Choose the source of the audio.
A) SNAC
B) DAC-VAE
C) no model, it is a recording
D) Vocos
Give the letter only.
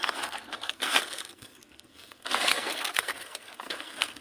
A